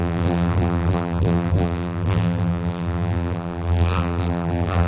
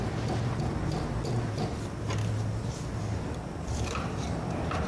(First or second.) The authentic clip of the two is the second